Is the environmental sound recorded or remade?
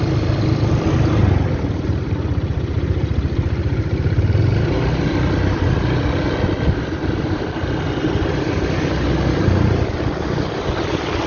recorded